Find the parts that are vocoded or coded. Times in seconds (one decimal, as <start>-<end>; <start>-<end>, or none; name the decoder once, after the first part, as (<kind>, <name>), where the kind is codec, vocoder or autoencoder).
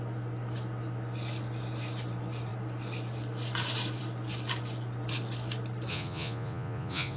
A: 5.9-7.2 (vocoder, Vocos)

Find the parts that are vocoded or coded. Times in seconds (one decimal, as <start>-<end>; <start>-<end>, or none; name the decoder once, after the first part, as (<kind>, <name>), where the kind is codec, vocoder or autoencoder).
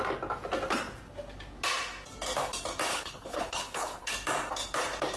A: 2.9-4.1 (codec, HILCodec)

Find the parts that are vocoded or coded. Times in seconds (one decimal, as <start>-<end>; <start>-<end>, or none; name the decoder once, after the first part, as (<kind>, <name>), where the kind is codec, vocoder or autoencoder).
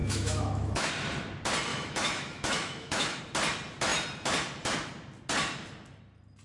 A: 0.0-0.9 (autoencoder, DAC-VAE); 1.7-3.2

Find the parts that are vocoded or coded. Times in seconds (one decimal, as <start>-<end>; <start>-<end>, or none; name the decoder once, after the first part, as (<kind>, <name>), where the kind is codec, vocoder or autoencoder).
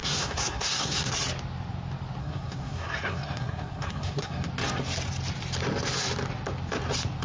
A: 0.0-1.1 (codec, SNAC); 2.2-4.5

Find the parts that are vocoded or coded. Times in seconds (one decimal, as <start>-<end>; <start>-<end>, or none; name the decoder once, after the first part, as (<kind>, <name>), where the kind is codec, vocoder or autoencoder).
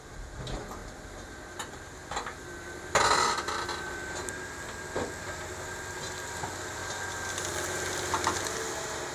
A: none